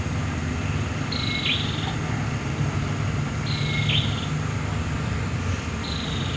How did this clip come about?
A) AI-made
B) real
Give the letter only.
B